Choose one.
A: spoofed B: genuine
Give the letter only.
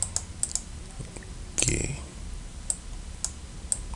B